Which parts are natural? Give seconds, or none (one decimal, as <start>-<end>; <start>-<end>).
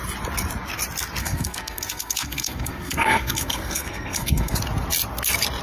0.0-1.2; 4.6-5.6